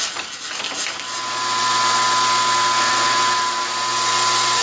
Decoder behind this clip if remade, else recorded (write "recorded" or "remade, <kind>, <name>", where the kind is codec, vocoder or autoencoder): recorded